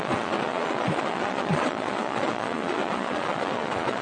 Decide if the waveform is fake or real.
fake